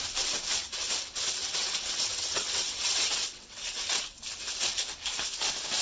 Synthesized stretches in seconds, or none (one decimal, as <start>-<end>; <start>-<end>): 1.4-4.2